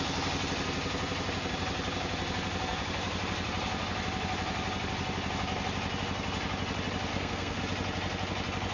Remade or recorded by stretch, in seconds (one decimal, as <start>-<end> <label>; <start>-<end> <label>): 0.0-7.1 recorded; 7.1-7.6 remade; 7.6-8.7 recorded